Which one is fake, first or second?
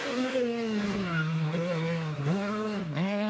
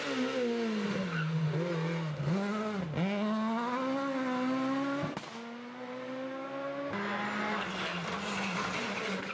first